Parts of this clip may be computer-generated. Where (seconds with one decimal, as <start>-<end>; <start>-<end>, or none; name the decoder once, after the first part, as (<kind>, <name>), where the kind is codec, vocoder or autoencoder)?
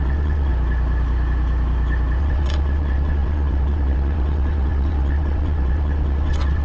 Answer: 0.0-0.5 (vocoder, WaveNeXt); 2.2-6.6